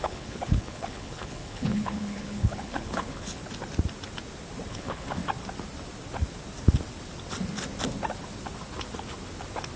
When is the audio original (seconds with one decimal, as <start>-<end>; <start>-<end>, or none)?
3.4-4.7; 5.2-9.8